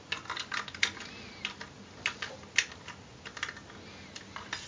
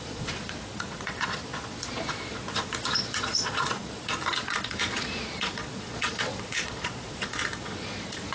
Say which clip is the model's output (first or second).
second